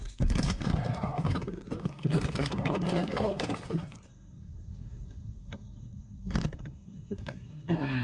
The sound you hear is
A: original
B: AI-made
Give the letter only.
B